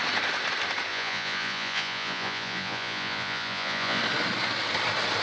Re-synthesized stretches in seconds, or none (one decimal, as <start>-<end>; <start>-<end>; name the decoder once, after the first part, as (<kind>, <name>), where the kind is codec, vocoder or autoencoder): 0.9-4.0 (vocoder, Vocos)